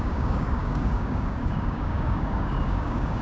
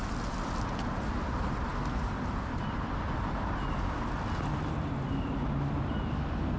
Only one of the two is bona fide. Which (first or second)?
second